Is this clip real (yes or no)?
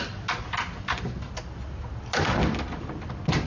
yes